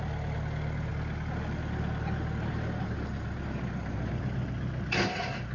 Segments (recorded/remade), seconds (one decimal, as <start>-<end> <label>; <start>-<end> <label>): 0.0-5.5 recorded